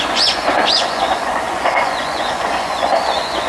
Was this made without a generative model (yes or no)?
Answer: no